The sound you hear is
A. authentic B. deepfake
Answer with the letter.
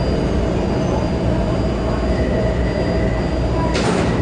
A